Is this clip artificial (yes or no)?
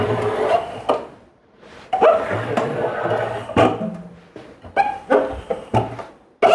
no